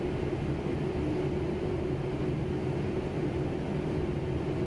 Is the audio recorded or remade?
recorded